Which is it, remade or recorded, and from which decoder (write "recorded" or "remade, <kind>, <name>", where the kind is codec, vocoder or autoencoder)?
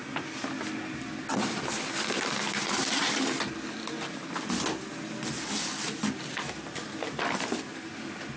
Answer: recorded